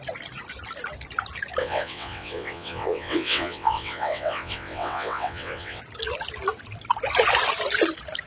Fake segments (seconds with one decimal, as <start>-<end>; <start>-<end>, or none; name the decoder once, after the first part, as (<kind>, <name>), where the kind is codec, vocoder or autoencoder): 1.6-5.8 (vocoder, WaveNeXt)